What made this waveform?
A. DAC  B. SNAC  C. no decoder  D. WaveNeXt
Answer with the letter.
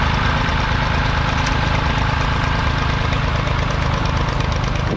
C